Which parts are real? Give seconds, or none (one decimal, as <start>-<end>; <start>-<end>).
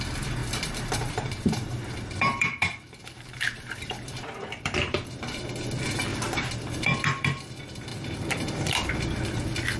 0.0-0.4; 5.4-6.1; 7.4-7.9; 8.9-9.8